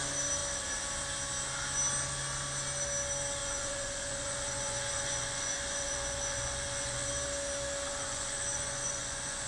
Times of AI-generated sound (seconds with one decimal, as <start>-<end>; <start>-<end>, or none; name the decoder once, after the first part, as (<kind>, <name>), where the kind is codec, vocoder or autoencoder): 3.4-7.1 (vocoder, Vocos); 7.9-9.5